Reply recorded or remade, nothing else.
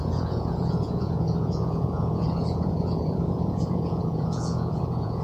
remade